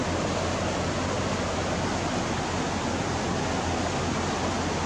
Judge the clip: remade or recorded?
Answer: recorded